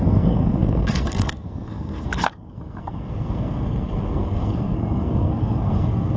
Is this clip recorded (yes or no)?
no